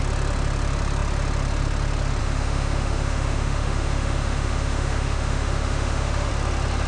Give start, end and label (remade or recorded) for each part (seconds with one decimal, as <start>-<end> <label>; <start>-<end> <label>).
0.0-2.2 recorded; 2.2-6.3 remade; 6.3-6.9 recorded